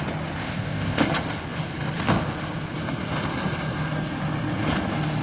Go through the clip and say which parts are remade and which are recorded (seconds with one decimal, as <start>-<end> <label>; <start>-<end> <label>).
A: 0.0-0.4 recorded; 0.4-1.0 remade; 1.0-5.2 recorded